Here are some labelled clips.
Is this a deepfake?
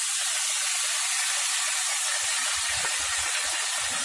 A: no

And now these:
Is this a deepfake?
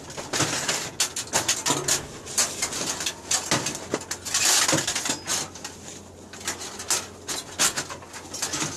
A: no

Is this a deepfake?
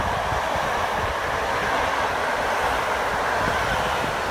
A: no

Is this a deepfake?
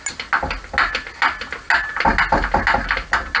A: no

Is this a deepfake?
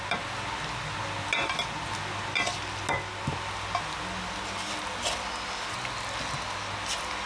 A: no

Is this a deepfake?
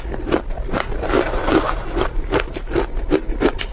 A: no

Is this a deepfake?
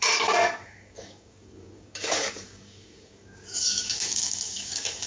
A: yes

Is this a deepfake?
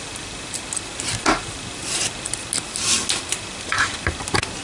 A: no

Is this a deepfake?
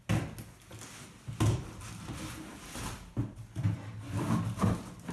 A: no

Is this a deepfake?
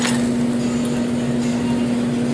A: no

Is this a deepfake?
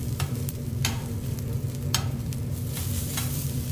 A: yes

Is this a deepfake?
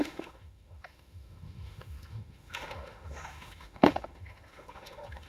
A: yes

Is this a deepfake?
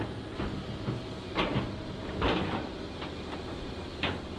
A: no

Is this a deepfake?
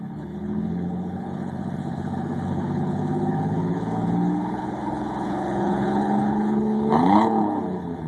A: yes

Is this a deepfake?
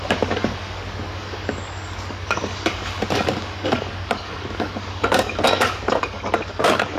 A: yes